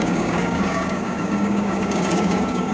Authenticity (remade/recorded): remade